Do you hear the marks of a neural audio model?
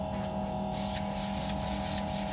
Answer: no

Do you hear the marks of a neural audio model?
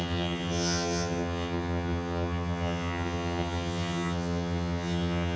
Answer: yes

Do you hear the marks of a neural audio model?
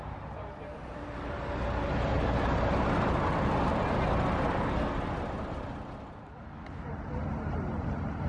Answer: no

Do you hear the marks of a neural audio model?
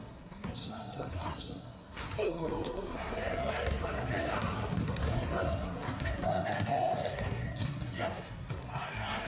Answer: yes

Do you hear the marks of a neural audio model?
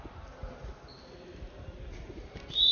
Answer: no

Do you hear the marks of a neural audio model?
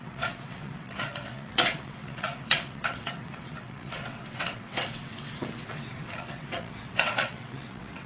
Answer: yes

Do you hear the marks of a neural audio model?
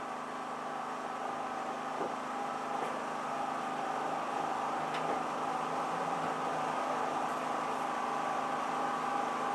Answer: no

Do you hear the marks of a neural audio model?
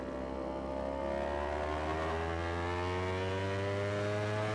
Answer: no